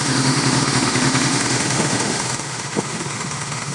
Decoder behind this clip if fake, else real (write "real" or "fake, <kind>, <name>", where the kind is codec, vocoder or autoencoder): fake, autoencoder, DAC-VAE